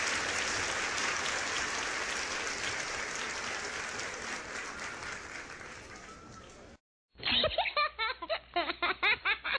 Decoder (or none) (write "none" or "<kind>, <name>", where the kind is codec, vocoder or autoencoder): none